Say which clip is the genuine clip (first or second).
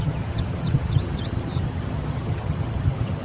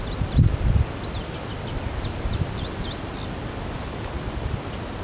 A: second